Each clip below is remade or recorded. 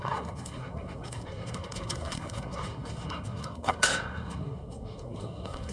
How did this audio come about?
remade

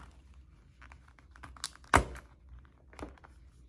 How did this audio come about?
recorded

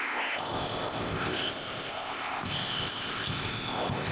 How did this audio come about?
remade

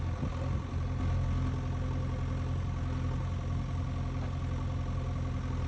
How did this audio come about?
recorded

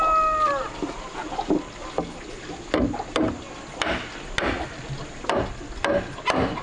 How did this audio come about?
recorded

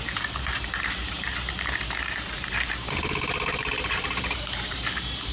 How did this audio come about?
remade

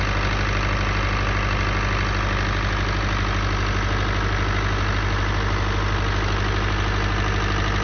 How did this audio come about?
recorded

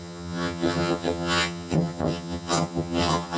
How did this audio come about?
remade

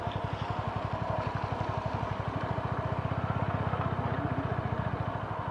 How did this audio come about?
recorded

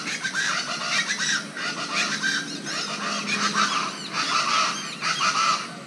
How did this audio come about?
recorded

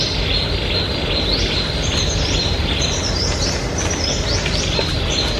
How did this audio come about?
recorded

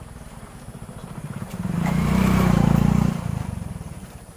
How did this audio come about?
remade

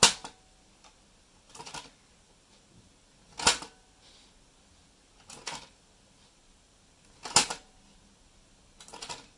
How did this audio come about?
recorded